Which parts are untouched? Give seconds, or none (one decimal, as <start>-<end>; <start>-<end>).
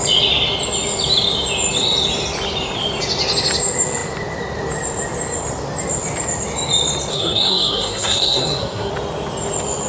0.0-7.1; 8.9-9.9